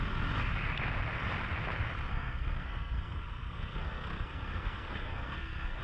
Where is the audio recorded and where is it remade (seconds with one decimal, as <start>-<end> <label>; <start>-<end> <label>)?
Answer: 0.0-2.1 recorded; 2.1-5.8 remade